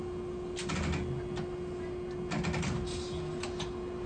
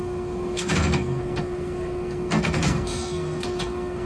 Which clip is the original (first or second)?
first